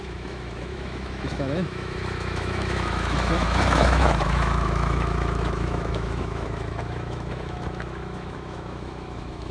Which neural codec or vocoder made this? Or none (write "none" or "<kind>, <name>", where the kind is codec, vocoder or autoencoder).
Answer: autoencoder, DAC-VAE